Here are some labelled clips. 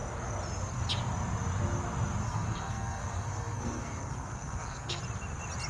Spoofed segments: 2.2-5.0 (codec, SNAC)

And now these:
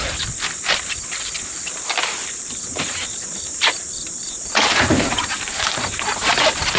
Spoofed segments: 2.2-6.3 (vocoder, BigVGAN v2)

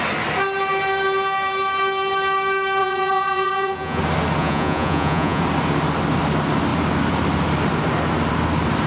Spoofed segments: 2.8-4.0 (vocoder, Vocos); 4.4-5.4